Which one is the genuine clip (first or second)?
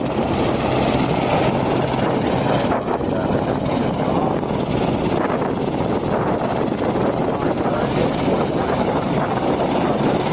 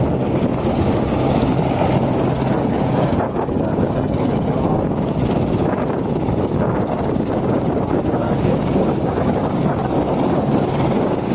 first